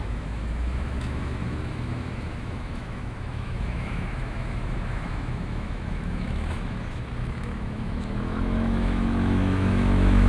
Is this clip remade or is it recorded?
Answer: remade